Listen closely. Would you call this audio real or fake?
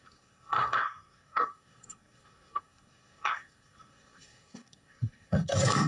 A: fake